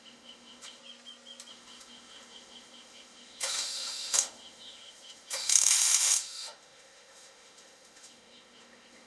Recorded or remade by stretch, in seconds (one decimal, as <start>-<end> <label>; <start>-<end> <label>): 0.0-0.8 remade; 0.8-1.5 recorded; 1.5-9.1 remade